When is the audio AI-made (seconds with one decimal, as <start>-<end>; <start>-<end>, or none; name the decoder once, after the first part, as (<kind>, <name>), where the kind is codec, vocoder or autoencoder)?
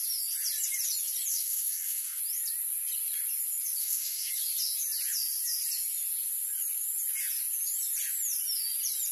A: 1.3-2.2 (codec, SNAC); 3.8-4.3